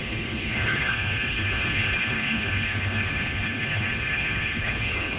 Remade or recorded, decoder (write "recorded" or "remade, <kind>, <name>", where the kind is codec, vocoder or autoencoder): remade, codec, HILCodec